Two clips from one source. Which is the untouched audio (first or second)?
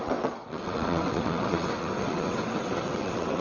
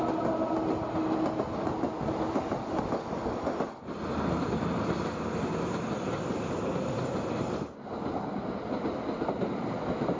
second